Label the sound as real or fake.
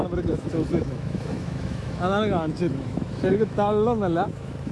fake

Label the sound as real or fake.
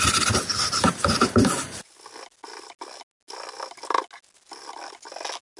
real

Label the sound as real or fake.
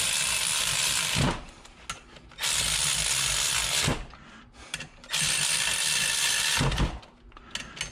real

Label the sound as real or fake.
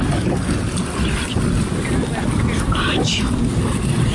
real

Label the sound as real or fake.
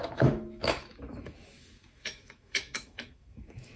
fake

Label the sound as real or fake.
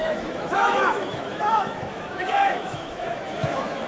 fake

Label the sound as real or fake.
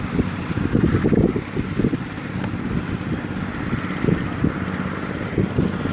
real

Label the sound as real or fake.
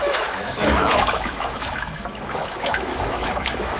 fake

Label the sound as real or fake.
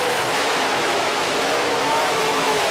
fake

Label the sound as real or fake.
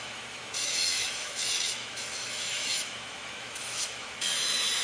fake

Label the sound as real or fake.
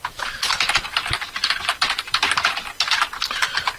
real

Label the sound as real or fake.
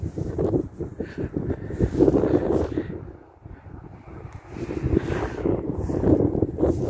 real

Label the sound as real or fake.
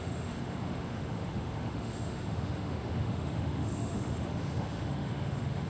fake